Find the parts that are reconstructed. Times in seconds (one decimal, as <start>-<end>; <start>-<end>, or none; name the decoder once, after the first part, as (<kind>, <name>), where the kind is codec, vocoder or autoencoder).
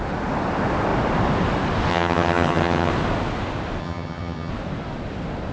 1.9-2.9 (vocoder, HiFi-GAN); 3.8-4.5